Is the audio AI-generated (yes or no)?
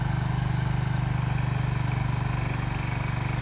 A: no